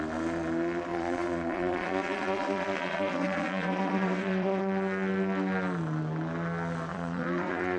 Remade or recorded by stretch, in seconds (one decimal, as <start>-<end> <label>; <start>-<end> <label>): 0.0-0.9 recorded; 0.9-4.6 remade; 4.6-6.9 recorded; 6.9-7.8 remade